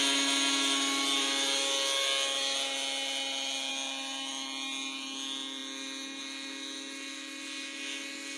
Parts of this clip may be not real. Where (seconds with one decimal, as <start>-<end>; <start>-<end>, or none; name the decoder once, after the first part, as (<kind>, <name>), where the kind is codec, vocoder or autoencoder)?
none